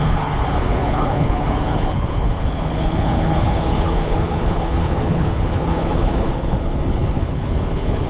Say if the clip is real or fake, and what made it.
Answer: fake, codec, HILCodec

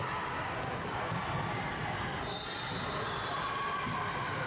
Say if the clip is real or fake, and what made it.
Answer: real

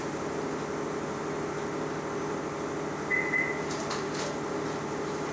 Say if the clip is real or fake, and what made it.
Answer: real